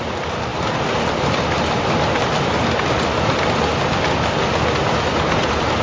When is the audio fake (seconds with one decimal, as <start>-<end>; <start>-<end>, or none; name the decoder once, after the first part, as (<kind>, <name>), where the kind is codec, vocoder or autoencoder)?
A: none